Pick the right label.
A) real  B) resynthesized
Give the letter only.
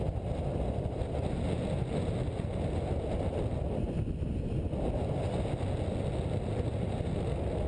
A